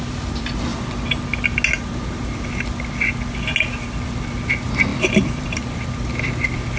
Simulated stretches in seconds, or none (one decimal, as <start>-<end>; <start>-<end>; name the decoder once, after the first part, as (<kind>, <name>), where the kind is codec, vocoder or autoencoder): 0.0-0.7 (vocoder, BigVGAN v2); 4.0-6.8